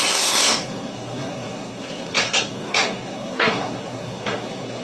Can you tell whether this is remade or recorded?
remade